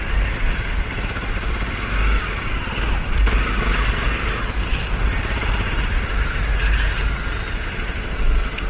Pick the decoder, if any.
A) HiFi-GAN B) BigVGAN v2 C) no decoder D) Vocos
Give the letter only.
C